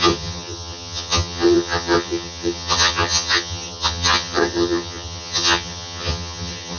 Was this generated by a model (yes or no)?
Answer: yes